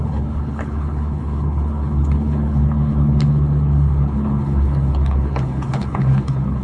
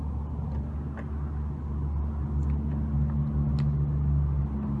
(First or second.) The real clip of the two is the second